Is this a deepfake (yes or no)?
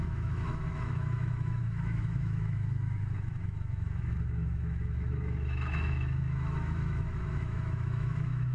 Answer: yes